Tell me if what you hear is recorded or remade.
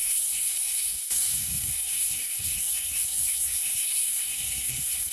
remade